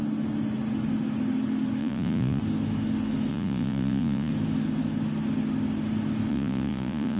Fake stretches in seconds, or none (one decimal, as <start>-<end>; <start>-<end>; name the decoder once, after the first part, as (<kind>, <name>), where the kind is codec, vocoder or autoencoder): 1.8-2.4 (vocoder, Vocos); 3.3-4.3; 6.3-7.2